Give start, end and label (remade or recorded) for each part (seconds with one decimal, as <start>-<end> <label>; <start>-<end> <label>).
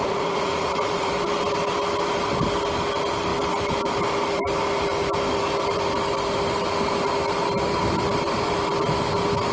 0.0-1.1 remade; 1.1-9.5 recorded